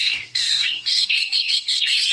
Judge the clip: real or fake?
fake